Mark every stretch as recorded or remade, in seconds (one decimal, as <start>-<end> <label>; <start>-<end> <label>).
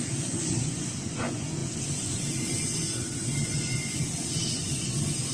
0.0-5.3 remade